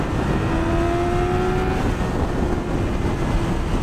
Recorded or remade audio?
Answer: recorded